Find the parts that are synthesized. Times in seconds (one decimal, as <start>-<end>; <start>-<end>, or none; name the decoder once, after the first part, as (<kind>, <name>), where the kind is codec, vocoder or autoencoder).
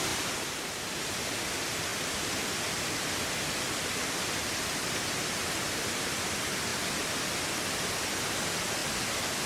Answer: none